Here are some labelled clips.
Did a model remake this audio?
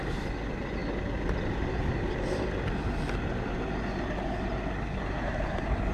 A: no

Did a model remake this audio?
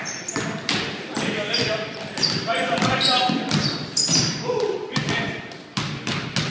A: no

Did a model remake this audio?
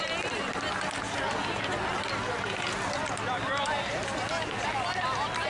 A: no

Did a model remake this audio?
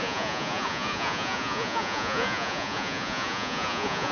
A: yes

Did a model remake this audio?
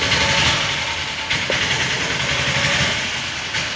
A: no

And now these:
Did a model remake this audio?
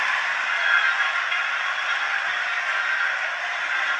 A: no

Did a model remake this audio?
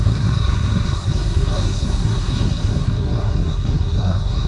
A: yes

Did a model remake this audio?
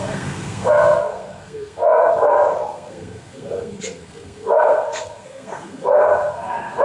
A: yes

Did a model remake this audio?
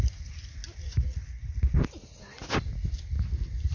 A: no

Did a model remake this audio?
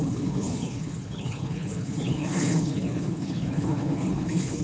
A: yes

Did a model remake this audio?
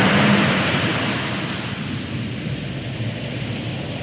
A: no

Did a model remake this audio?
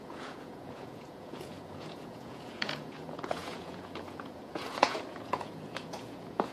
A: yes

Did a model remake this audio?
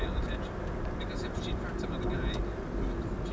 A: no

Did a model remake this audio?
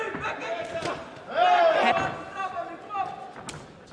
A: no